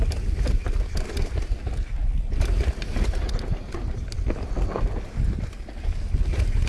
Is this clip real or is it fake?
real